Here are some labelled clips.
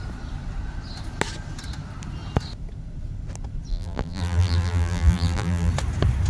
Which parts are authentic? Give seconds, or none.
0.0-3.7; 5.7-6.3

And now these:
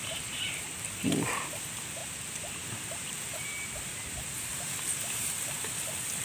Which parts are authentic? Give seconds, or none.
2.0-5.7

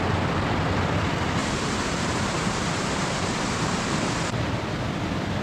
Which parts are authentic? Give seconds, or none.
0.0-1.4; 4.6-5.4

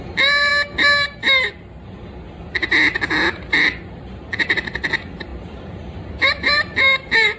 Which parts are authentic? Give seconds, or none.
0.5-3.8

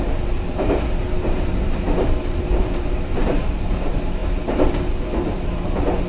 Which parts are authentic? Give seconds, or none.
none

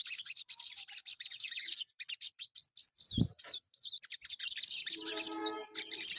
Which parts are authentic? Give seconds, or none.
5.4-6.2